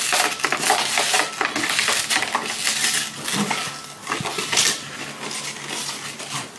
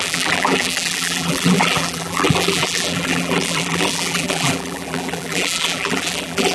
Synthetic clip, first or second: second